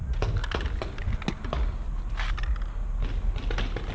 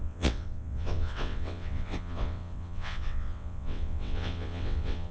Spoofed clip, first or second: second